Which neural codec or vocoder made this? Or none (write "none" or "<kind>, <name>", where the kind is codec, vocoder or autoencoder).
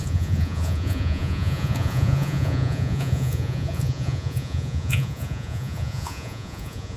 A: vocoder, Vocos